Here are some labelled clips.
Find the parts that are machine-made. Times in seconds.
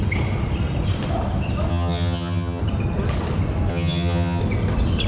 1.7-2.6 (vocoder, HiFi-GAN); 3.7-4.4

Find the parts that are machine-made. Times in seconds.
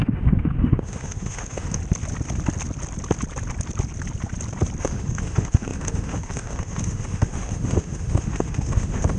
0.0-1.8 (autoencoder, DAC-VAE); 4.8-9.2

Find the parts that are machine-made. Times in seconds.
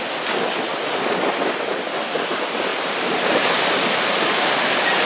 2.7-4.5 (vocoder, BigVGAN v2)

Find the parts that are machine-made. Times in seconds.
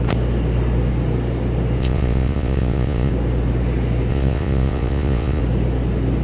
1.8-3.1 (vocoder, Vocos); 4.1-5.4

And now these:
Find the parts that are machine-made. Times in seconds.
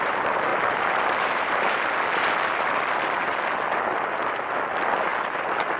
none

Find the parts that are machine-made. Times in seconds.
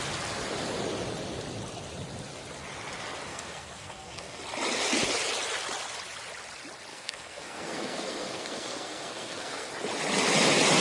3.3-4.4 (codec, SNAC); 6.9-9.7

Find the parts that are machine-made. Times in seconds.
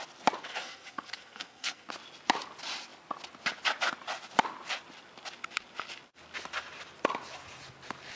0.4-1.9 (codec, SNAC)